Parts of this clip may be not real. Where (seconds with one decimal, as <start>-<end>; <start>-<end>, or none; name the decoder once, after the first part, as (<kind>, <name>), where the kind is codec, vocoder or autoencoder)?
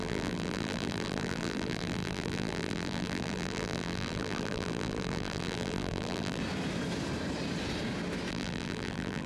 0.0-6.4 (vocoder, BigVGAN v2); 8.3-9.3